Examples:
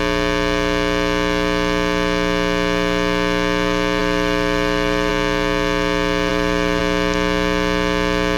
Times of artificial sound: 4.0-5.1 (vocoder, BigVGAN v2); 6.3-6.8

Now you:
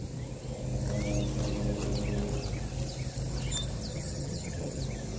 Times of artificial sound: 3.9-4.8 (vocoder, HiFi-GAN)